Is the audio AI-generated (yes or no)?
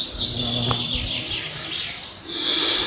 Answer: no